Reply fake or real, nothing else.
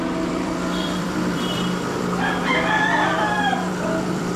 fake